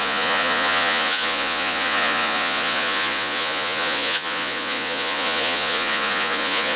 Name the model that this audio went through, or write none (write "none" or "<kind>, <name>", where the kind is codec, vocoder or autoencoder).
vocoder, Vocos